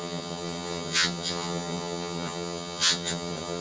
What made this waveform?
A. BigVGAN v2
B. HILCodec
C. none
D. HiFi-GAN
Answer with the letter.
D